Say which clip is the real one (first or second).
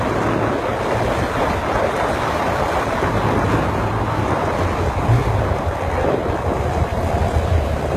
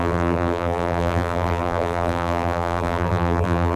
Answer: first